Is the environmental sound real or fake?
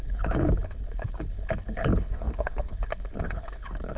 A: fake